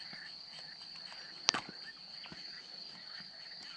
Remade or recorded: recorded